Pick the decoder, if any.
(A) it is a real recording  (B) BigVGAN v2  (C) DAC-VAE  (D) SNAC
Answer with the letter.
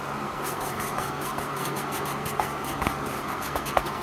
D